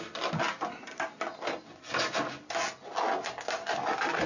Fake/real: real